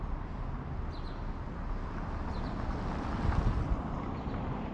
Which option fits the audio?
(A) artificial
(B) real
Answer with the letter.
B